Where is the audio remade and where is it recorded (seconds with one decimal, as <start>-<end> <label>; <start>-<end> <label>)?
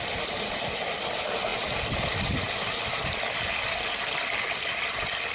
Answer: 0.0-5.3 recorded